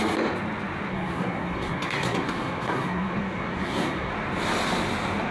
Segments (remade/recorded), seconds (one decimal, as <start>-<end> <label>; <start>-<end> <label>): 0.0-0.9 recorded; 0.9-4.1 remade; 4.1-5.3 recorded